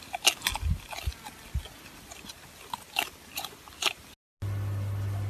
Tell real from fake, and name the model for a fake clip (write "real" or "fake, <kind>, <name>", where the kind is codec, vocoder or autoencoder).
real